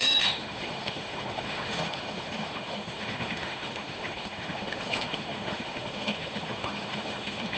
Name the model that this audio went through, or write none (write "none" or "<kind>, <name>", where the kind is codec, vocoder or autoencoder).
autoencoder, DAC-VAE